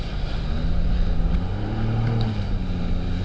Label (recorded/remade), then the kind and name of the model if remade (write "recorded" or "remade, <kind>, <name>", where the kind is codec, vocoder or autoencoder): recorded